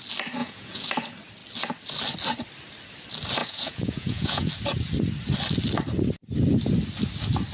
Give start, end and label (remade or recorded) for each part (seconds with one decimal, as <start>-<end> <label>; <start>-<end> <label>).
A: 0.0-0.4 recorded; 0.4-0.9 remade; 0.9-3.4 recorded; 3.4-4.5 remade; 4.5-7.5 recorded